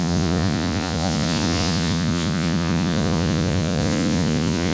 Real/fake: fake